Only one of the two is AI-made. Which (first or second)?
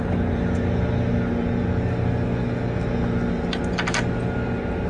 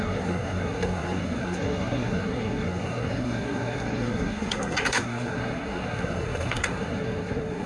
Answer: second